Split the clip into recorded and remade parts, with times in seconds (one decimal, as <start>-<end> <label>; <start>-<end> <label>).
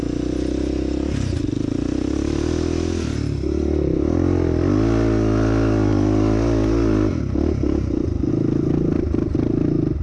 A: 0.0-10.0 recorded